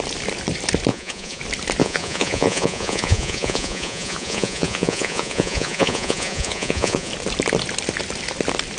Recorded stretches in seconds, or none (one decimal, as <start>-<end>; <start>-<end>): 0.0-0.9; 1.4-1.8; 7.1-8.8